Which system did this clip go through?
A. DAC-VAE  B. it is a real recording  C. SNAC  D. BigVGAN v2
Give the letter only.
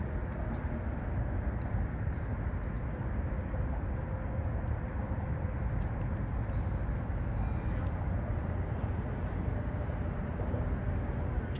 B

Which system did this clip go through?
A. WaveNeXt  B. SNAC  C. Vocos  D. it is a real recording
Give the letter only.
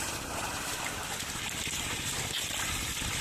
D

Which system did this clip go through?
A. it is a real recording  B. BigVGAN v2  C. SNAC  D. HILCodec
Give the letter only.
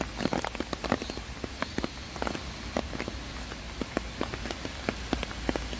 A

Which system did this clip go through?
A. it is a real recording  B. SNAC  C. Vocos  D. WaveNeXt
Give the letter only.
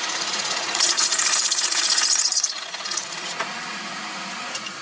C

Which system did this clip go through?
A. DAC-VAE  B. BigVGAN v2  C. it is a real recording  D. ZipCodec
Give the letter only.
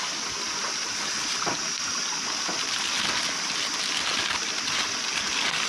C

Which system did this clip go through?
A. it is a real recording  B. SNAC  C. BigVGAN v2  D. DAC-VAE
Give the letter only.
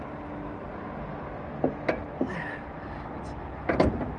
A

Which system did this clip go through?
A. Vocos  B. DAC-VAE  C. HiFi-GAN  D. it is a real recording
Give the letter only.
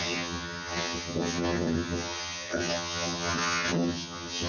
C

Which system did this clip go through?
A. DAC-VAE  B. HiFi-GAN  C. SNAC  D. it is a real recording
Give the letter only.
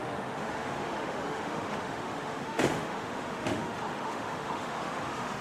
A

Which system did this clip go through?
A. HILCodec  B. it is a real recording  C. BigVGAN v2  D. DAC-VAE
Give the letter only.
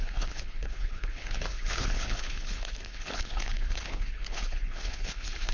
A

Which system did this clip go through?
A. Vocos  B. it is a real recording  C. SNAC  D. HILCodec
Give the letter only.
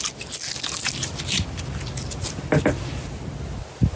B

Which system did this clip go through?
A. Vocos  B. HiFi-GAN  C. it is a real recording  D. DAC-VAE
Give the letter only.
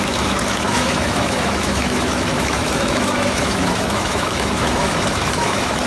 D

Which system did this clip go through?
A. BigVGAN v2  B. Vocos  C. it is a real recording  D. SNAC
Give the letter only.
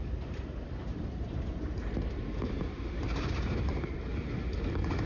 A